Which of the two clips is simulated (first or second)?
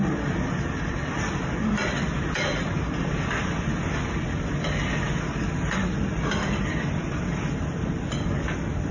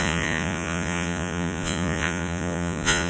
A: second